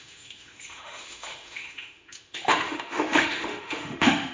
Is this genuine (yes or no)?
no